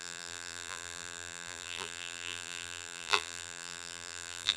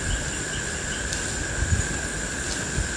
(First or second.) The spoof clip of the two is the first